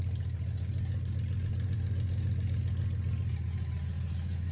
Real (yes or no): yes